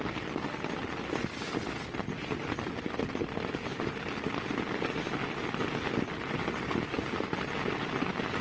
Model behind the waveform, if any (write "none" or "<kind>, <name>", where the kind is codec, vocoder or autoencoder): none